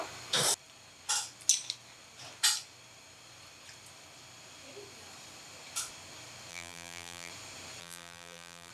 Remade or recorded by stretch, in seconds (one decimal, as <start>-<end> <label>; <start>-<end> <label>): 0.0-6.5 recorded; 6.5-7.3 remade; 7.3-7.8 recorded; 7.8-8.7 remade